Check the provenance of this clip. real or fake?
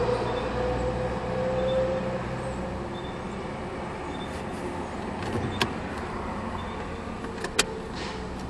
real